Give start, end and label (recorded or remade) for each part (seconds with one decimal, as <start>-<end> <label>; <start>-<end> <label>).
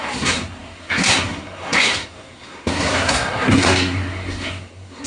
0.0-5.1 remade